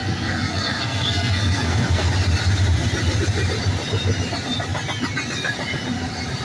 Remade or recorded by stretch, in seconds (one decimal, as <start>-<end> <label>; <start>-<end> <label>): 0.0-2.1 remade; 2.1-6.4 recorded